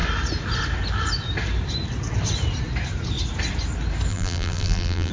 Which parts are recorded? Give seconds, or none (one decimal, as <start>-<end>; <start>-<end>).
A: 0.0-4.1